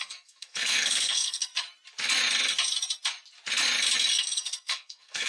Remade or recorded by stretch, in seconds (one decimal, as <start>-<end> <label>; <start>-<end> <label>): 0.0-1.5 remade; 1.5-4.2 recorded; 4.2-5.3 remade